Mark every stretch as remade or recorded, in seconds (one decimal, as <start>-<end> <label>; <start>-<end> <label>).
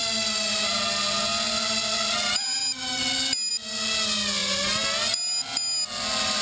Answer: 0.0-6.4 recorded